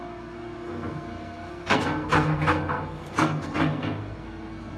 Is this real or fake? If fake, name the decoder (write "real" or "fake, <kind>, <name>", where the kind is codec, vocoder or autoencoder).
fake, codec, SNAC